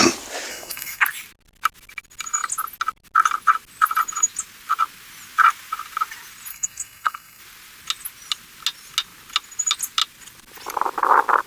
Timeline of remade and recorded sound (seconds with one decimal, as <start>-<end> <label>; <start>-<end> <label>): 0.0-0.5 recorded; 0.5-1.0 remade; 1.0-6.5 recorded; 6.5-7.4 remade; 7.4-11.5 recorded